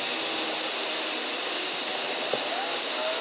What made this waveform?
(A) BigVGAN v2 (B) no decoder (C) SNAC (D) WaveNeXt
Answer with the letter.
B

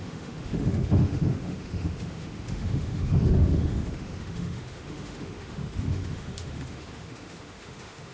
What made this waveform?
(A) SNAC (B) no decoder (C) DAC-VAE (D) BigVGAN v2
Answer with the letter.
C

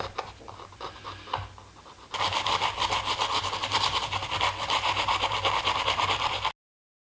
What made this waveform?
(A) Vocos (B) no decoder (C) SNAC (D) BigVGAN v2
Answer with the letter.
B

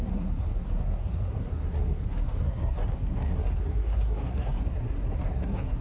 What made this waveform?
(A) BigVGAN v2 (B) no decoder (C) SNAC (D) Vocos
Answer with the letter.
C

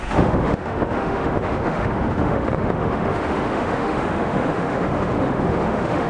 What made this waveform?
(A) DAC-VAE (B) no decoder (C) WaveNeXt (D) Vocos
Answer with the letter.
A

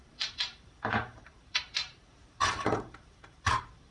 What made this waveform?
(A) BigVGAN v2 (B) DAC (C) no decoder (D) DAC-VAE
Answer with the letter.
A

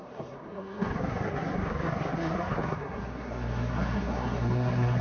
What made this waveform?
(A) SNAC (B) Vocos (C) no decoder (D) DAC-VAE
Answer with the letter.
A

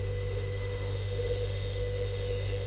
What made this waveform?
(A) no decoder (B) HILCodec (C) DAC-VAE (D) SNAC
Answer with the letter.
C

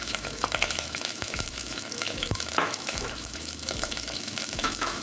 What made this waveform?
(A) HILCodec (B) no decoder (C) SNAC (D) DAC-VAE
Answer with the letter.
D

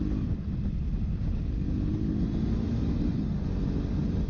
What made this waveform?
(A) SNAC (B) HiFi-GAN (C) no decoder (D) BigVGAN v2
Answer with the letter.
C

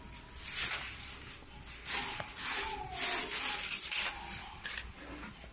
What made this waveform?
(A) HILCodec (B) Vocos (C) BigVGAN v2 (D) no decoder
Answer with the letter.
D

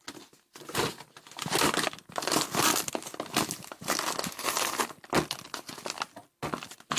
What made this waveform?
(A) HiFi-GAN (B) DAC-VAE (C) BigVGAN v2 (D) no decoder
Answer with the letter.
D